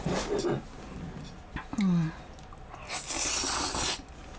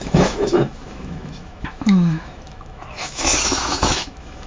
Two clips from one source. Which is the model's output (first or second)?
second